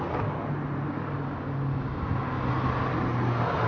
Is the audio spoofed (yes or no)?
no